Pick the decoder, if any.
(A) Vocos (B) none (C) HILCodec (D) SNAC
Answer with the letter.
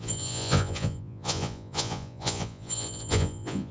A